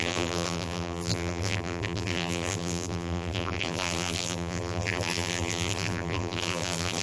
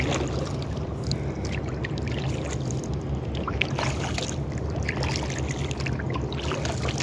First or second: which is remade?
first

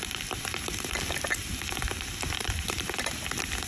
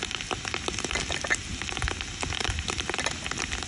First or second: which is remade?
first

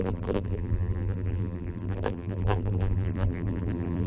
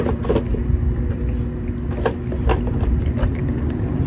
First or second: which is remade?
first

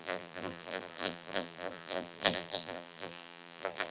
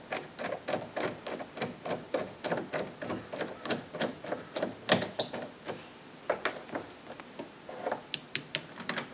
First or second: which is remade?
first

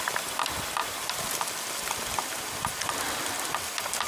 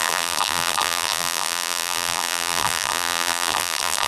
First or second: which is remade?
second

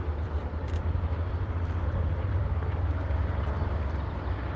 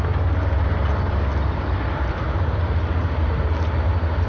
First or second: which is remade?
first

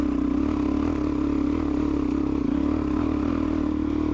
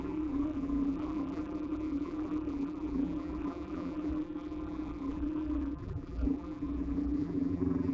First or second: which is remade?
second